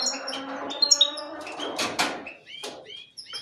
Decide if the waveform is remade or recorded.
recorded